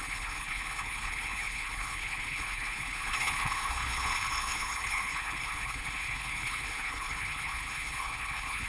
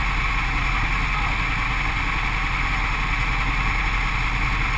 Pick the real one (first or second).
second